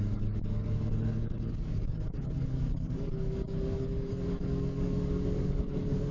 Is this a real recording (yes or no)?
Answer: no